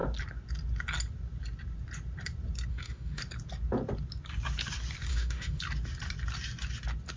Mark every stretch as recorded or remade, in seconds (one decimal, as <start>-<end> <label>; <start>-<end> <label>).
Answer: 0.0-2.7 recorded; 2.7-3.2 remade; 3.2-5.1 recorded; 5.1-5.6 remade; 5.6-7.2 recorded